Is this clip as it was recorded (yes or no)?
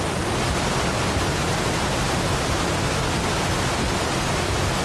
yes